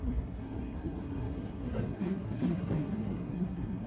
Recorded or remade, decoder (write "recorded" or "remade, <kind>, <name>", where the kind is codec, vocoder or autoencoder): remade, codec, SNAC